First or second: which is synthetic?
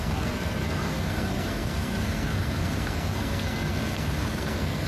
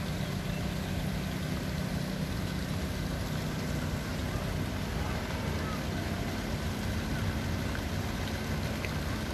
first